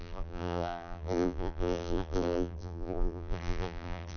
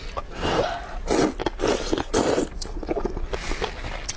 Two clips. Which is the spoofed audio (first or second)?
first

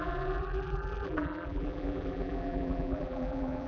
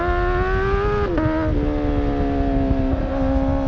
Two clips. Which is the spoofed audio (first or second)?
first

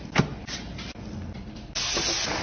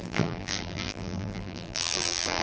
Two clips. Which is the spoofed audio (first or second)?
second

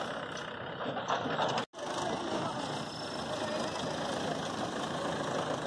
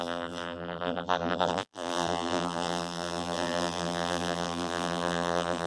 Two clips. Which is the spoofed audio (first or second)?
second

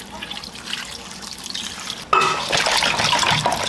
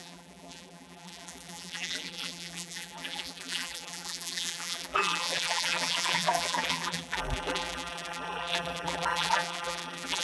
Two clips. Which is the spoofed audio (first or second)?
second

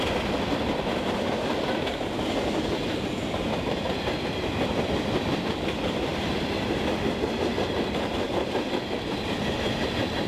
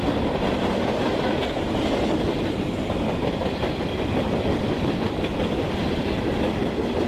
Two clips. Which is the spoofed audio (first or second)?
first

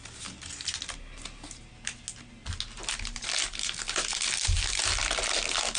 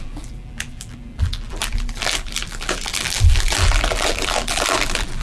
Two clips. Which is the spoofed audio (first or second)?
second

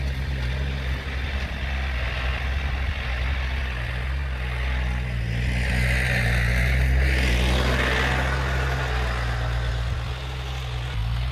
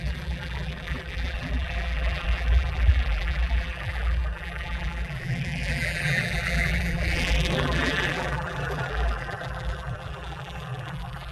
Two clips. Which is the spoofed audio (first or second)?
second